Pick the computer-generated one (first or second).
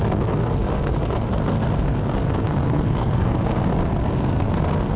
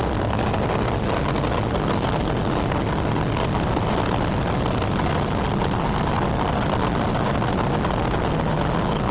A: first